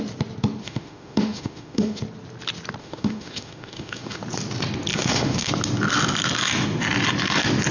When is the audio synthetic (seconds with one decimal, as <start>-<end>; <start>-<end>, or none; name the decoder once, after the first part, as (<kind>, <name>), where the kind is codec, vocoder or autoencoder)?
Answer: 0.6-2.0 (autoencoder, DAC-VAE); 2.8-4.2; 4.9-5.5